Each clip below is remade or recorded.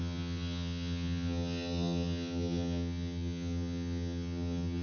remade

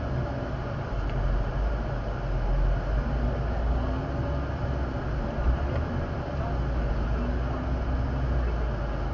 recorded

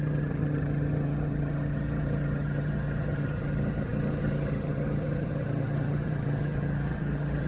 remade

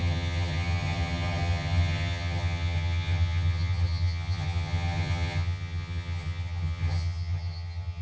remade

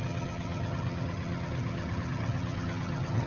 remade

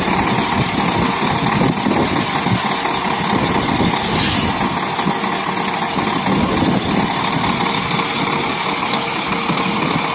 recorded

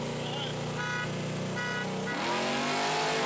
recorded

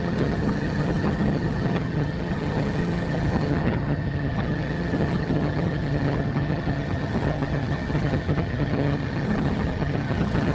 remade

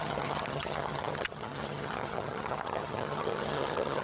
remade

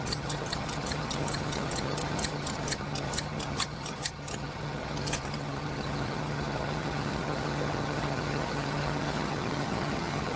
remade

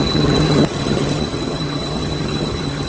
remade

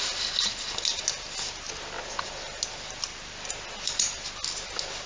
recorded